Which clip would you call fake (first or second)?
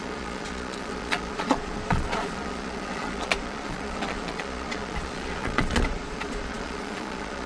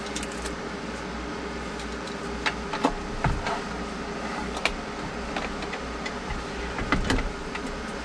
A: first